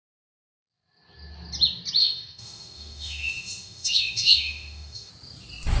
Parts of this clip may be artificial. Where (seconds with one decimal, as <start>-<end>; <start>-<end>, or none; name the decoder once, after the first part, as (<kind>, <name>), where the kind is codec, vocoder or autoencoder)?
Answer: 2.0-5.1 (autoencoder, DAC-VAE)